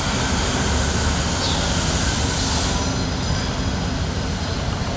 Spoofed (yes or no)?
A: no